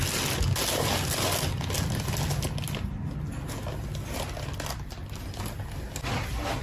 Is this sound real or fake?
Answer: real